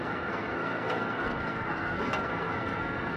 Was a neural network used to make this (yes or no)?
yes